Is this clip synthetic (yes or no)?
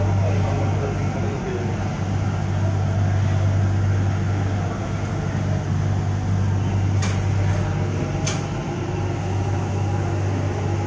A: no